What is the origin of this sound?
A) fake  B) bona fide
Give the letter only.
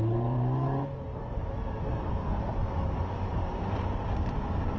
A